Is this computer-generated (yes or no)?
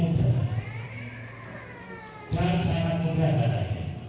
no